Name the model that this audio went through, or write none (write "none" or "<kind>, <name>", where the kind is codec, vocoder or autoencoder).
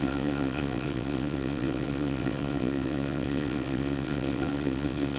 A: vocoder, WaveNeXt